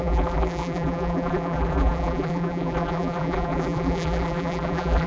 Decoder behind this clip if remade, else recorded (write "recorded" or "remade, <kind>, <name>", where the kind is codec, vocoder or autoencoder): remade, vocoder, BigVGAN v2